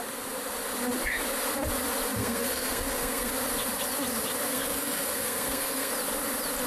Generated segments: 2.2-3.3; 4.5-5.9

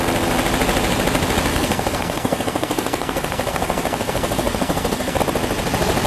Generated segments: 1.5-5.2

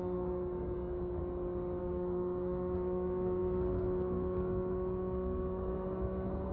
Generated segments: 0.0-1.2; 1.8-6.5

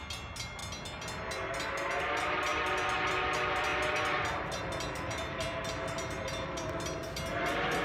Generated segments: none

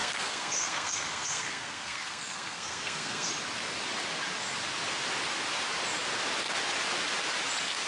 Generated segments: 0.0-3.3